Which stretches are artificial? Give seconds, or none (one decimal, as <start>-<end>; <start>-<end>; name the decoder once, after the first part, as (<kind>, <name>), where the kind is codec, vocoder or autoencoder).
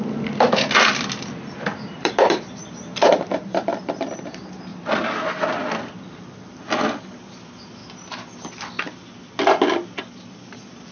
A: 1.7-4.3 (vocoder, BigVGAN v2)